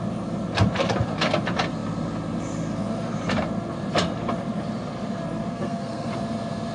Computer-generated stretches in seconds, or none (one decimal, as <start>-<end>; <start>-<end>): 5.5-6.1